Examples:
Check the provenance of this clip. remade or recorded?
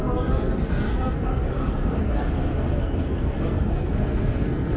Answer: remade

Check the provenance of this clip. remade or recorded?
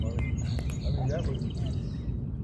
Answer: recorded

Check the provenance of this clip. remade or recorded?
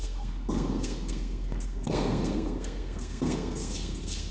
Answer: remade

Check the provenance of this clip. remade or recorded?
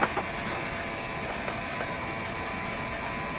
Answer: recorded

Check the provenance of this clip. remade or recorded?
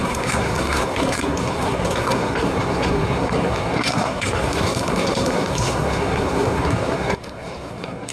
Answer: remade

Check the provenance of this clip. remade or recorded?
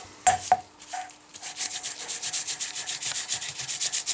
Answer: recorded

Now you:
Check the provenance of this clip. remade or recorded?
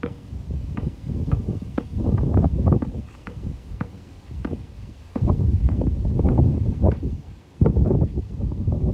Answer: remade